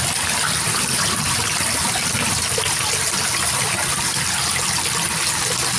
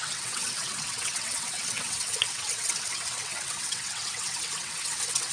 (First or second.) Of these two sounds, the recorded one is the first